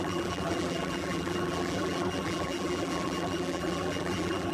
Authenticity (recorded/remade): remade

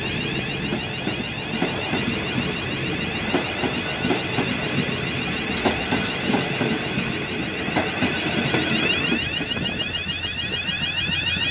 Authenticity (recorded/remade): recorded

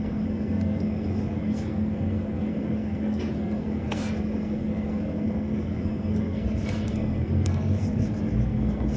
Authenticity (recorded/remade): remade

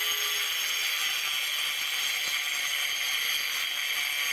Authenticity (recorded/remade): recorded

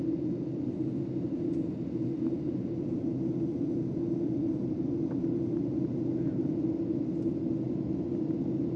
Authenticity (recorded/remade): recorded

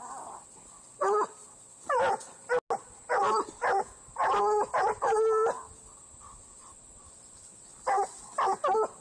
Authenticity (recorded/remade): recorded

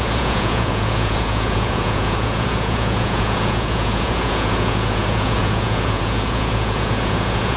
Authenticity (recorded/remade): remade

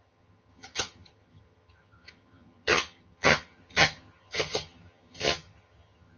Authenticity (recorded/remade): remade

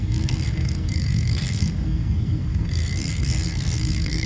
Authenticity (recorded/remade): remade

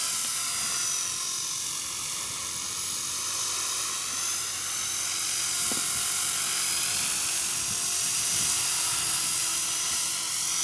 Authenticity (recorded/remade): recorded